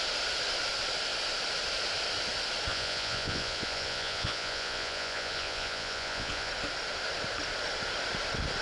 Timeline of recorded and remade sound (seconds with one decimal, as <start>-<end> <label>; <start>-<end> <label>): 0.0-2.7 recorded; 2.7-6.5 remade; 6.5-8.6 recorded